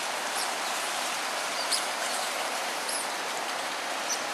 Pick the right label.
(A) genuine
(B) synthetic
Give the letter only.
B